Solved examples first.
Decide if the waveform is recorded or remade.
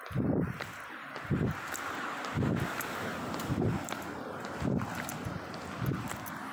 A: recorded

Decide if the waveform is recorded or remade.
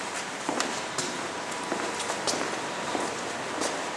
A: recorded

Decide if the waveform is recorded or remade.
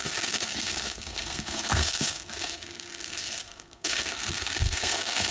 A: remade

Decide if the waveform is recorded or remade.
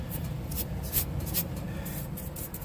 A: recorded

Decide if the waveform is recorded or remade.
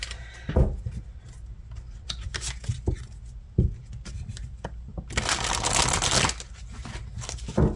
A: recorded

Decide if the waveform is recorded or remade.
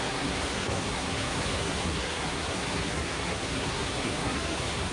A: remade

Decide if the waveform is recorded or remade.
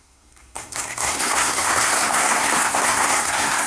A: remade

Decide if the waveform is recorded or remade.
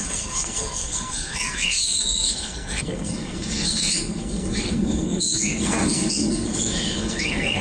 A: remade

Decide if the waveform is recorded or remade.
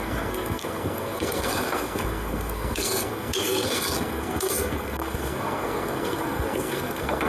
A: remade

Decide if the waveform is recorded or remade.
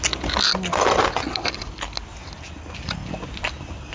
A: recorded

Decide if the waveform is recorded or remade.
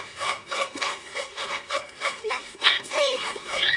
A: remade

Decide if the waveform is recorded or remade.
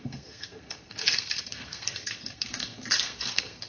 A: remade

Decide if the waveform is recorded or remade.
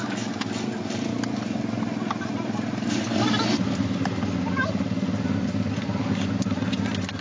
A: recorded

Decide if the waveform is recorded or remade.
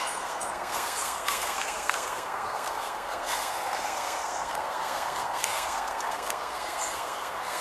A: remade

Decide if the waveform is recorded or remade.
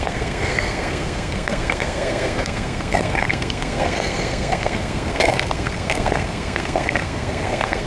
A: remade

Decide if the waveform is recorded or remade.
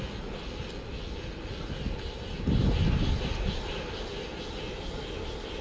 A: recorded